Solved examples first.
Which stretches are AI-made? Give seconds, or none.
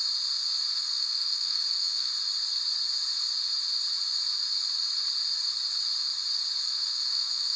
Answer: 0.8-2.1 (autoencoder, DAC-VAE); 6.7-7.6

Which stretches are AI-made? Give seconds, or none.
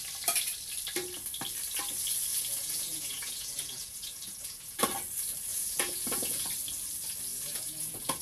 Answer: 2.3-4.8 (vocoder, Vocos); 5.5-6.5; 7.3-8.2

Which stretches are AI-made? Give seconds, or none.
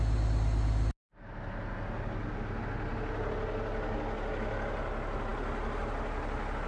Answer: none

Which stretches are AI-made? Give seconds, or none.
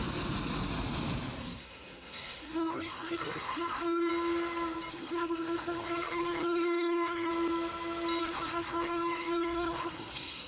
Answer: 1.4-4.1 (codec, SNAC); 4.9-7.3; 8.2-10.5